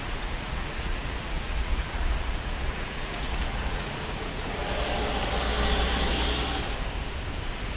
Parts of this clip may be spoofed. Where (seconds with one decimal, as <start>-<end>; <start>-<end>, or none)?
0.0-4.6